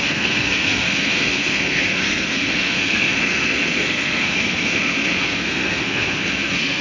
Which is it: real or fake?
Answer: fake